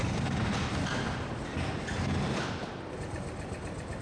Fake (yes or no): no